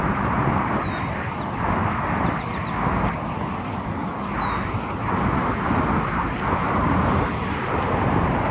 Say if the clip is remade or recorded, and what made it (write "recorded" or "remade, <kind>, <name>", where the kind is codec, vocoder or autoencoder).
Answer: recorded